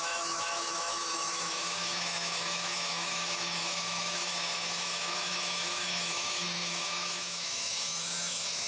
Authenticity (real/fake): fake